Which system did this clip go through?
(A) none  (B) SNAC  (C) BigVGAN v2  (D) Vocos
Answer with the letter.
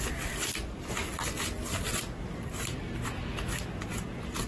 A